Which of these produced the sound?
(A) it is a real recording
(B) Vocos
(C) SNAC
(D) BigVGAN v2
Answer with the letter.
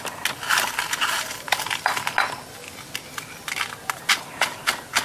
A